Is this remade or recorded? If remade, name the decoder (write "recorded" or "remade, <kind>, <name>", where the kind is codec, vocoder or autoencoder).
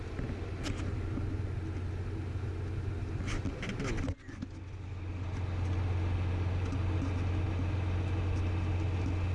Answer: recorded